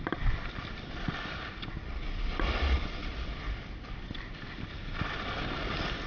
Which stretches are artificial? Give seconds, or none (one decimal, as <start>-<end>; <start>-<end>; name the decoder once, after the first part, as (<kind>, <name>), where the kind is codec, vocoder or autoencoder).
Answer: none